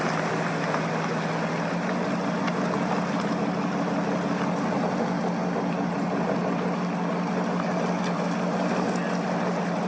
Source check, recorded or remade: recorded